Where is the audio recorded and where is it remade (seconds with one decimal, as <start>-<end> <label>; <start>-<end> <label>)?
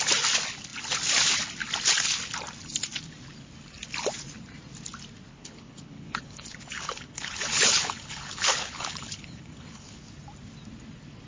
0.0-5.3 recorded; 5.3-10.0 remade; 10.0-11.3 recorded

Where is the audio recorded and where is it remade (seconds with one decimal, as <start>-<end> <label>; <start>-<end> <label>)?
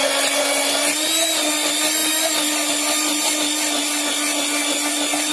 0.0-5.3 recorded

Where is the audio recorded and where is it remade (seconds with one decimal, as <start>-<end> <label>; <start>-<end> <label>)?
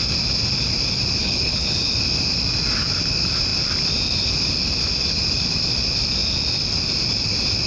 0.0-1.2 recorded; 1.2-1.9 remade; 1.9-7.7 recorded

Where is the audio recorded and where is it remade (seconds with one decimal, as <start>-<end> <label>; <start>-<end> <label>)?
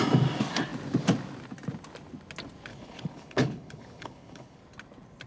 0.0-2.7 recorded; 2.7-4.6 remade; 4.6-5.3 recorded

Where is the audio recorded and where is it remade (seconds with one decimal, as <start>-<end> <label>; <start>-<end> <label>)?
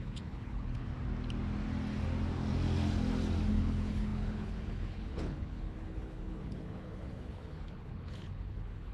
0.0-0.9 remade; 0.9-3.5 recorded; 3.5-8.9 remade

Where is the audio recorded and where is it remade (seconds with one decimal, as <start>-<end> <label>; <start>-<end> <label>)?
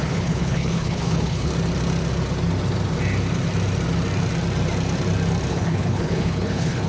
0.0-1.5 remade; 1.5-5.5 recorded; 5.5-6.9 remade